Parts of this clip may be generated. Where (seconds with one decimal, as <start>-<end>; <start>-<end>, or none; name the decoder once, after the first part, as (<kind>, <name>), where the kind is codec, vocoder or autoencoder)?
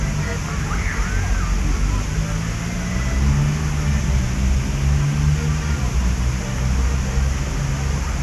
none